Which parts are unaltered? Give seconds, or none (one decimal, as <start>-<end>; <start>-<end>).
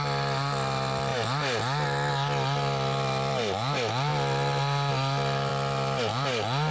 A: 0.0-6.7